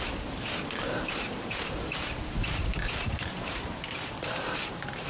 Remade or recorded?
remade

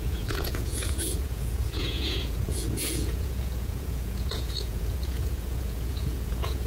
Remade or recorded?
remade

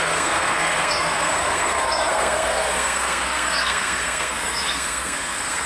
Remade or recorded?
remade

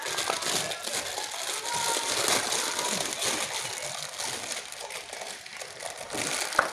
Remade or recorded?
recorded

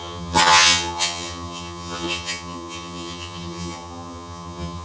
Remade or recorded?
remade